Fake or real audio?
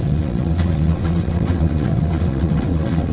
fake